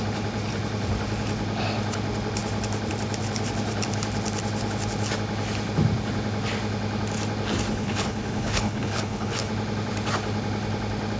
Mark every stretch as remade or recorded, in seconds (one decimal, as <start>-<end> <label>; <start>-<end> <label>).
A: 0.0-7.7 recorded; 7.7-9.5 remade; 9.5-11.2 recorded